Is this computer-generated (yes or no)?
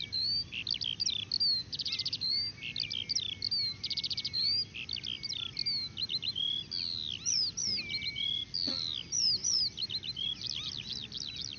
no